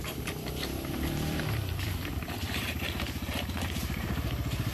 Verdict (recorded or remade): remade